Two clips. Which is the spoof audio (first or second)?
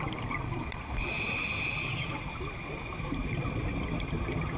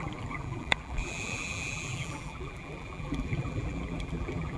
second